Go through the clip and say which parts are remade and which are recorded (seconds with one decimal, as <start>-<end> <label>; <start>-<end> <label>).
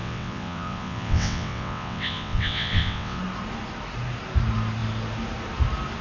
0.0-3.2 remade; 3.2-6.0 recorded